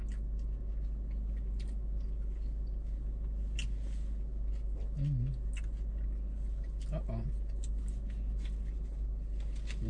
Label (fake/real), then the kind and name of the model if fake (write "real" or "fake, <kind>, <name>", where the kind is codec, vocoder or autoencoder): real